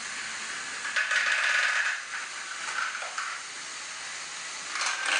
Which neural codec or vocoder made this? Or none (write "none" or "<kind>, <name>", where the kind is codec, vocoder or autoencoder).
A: none